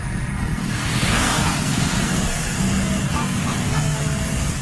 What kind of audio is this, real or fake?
fake